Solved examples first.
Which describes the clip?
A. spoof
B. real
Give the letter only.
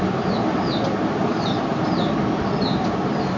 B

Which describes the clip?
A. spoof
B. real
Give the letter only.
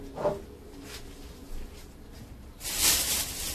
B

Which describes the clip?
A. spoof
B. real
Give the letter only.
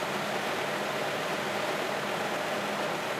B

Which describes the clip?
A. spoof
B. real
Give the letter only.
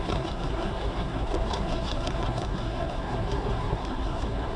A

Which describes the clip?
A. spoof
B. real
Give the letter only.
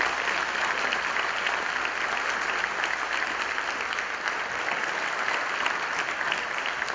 B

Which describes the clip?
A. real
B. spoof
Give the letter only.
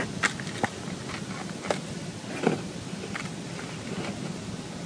A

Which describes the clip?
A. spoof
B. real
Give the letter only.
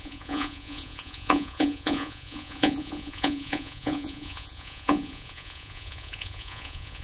A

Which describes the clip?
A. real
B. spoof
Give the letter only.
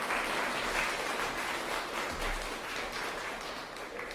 A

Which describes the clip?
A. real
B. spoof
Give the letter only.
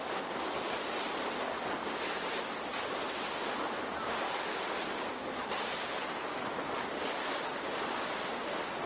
A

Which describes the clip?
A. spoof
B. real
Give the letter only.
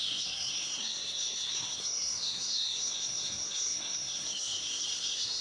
A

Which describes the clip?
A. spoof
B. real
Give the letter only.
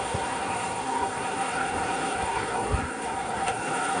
A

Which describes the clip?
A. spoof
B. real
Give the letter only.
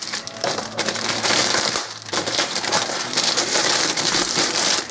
A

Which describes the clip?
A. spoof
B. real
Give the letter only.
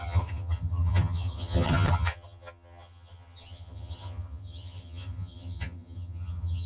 A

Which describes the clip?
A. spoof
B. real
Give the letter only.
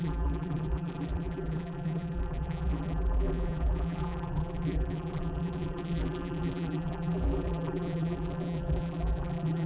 A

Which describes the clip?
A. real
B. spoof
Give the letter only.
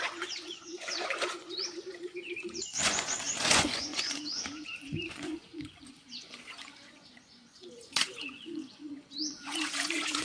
B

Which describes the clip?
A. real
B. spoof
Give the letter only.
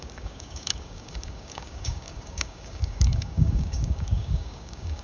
B